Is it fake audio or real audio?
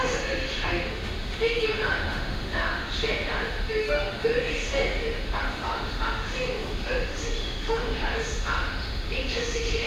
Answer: fake